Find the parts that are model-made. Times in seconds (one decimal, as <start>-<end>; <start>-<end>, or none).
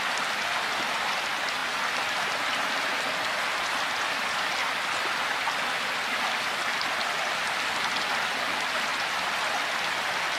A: none